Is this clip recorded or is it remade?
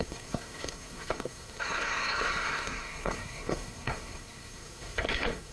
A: remade